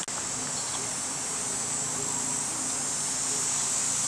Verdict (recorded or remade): recorded